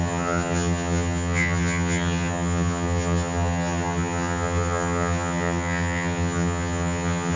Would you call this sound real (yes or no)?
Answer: no